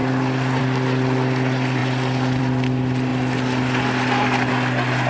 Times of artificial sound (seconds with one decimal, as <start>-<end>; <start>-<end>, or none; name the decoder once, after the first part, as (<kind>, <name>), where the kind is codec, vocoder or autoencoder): none